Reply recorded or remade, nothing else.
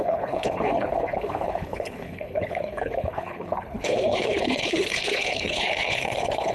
remade